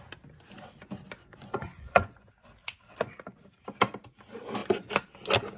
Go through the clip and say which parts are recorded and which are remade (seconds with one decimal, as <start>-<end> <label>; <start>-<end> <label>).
0.0-1.2 recorded; 1.2-2.3 remade; 2.3-5.6 recorded

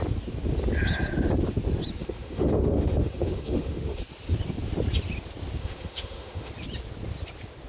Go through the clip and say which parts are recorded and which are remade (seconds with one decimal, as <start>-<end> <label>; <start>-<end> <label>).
0.0-2.0 recorded; 2.0-4.0 remade; 4.0-5.6 recorded; 5.6-6.5 remade; 6.5-7.7 recorded

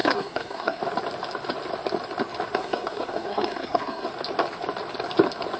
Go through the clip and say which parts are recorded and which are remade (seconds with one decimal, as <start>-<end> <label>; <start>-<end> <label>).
0.0-0.8 remade; 0.8-2.6 recorded; 2.6-4.1 remade; 4.1-5.6 recorded

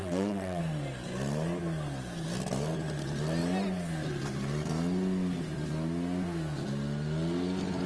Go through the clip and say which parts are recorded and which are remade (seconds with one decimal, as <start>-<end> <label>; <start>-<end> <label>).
0.0-0.6 remade; 0.6-7.9 recorded

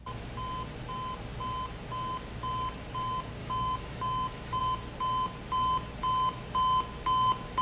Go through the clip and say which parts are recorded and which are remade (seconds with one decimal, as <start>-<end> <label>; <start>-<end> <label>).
0.0-3.4 recorded; 3.4-4.6 remade; 4.6-7.6 recorded

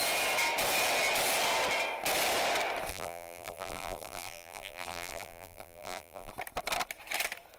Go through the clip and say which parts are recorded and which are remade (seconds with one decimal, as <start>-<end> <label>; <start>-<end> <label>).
0.0-2.9 recorded; 2.9-6.3 remade; 6.3-7.6 recorded

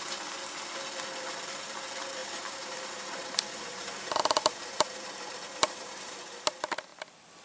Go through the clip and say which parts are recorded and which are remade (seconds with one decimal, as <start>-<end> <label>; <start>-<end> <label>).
0.0-2.2 recorded; 2.2-6.4 remade; 6.4-7.4 recorded

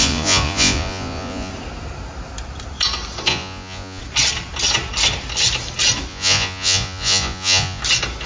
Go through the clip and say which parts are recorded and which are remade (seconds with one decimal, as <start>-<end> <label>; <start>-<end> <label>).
0.0-1.5 remade; 1.5-3.3 recorded; 3.3-4.0 remade; 4.0-6.1 recorded; 6.1-7.8 remade; 7.8-8.3 recorded